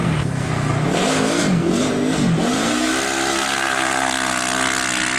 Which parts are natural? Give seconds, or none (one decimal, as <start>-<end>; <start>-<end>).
2.9-5.2